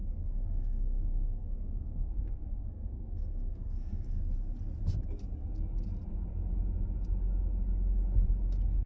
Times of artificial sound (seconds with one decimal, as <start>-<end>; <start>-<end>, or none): 0.0-4.2